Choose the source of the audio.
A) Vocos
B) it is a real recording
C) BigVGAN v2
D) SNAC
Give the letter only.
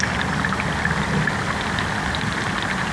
B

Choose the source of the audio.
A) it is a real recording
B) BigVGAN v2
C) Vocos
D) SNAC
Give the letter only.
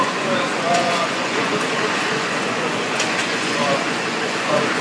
C